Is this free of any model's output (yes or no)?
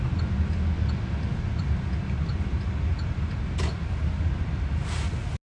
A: yes